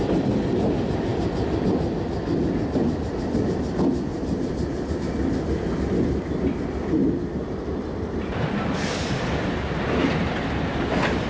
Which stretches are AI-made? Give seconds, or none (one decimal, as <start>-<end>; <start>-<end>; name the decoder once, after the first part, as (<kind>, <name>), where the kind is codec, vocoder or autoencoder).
4.1-5.0 (vocoder, BigVGAN v2); 7.4-8.7